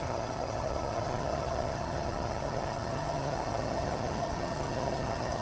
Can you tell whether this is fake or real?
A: fake